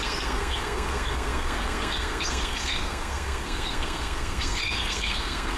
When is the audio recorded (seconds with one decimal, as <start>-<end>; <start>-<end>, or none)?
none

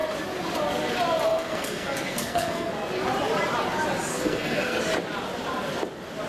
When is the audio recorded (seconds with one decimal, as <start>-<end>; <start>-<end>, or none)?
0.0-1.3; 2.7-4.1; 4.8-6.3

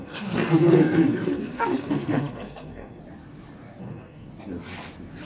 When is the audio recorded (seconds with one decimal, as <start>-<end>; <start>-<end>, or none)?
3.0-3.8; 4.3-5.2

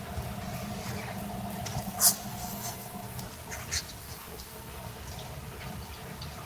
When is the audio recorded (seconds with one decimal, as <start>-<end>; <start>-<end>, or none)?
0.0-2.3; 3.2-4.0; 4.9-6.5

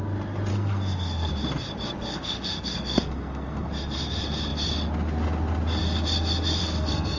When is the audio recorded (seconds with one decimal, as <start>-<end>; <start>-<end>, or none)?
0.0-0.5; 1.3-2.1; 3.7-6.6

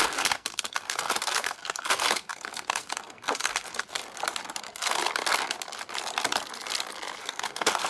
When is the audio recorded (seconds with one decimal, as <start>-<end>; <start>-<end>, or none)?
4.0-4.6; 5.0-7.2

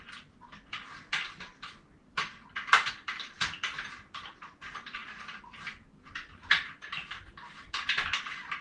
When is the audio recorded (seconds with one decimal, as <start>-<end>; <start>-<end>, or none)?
0.0-8.6

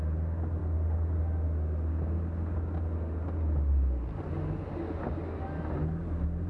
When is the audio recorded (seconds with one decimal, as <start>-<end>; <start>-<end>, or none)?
0.0-6.5